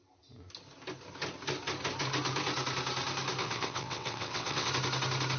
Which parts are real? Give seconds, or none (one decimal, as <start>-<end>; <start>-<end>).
0.0-3.4; 4.7-5.4